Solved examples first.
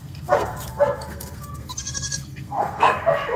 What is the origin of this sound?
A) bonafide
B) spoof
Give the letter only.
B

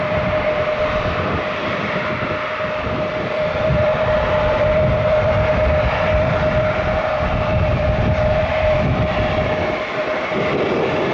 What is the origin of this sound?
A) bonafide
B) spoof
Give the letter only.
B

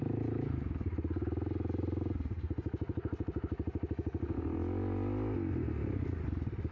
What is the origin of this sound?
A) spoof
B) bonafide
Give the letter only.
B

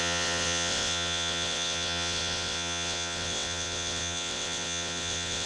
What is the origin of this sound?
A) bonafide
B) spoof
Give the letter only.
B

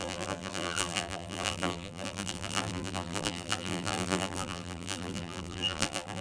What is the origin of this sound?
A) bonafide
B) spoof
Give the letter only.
B